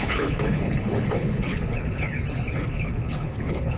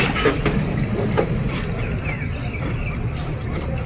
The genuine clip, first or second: second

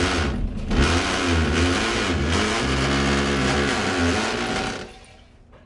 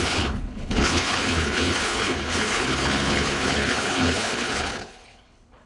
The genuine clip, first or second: first